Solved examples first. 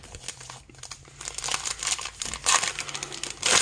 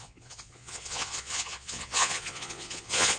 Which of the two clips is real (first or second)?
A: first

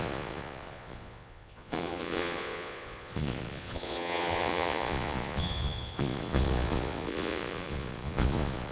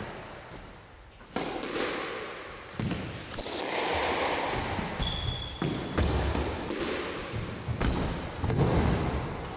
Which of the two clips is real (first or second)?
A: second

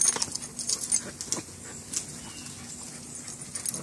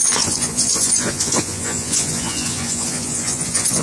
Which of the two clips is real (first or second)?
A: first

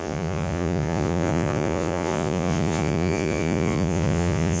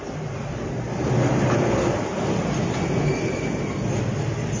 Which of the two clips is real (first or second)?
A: second